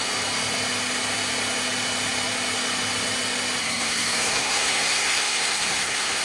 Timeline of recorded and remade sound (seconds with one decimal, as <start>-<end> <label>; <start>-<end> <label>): 0.0-3.6 recorded; 3.6-6.2 remade